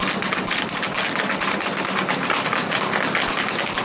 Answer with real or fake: real